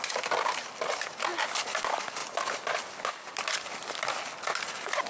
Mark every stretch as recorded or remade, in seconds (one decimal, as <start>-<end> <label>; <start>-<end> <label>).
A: 0.0-5.1 recorded